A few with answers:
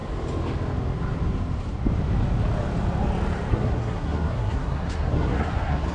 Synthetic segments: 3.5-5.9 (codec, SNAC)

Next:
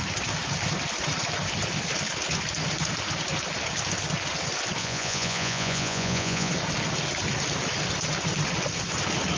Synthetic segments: 4.8-6.5 (vocoder, Vocos)

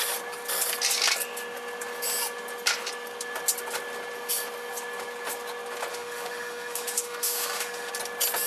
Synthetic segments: 5.9-7.9 (autoencoder, DAC-VAE)

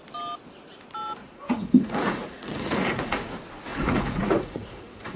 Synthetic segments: 1.2-3.3 (vocoder, Vocos); 3.7-5.2

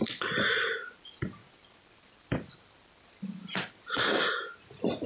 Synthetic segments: 1.4-4.5 (vocoder, BigVGAN v2)